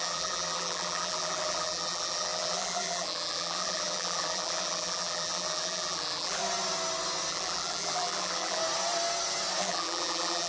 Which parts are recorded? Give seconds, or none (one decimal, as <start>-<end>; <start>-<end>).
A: 6.4-7.3; 8.6-9.6